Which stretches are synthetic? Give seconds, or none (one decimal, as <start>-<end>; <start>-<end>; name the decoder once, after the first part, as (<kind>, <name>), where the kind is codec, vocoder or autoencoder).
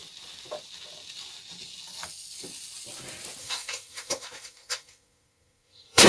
3.4-6.1 (codec, SNAC)